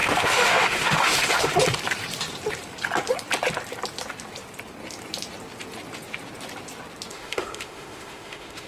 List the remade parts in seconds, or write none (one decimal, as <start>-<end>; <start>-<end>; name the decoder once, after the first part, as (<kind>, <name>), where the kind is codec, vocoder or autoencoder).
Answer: 0.0-1.5 (autoencoder, DAC-VAE); 7.1-8.7